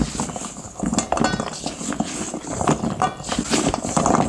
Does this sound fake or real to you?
real